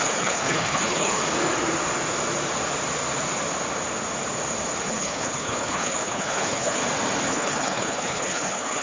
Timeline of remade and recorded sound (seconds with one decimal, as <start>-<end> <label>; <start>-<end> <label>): 0.0-1.2 remade; 1.2-4.8 recorded; 4.8-6.8 remade; 6.8-7.3 recorded; 7.3-8.8 remade